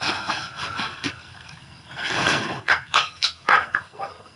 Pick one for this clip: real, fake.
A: fake